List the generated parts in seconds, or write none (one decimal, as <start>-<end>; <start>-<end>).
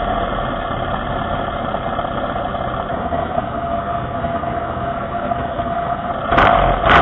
2.9-6.1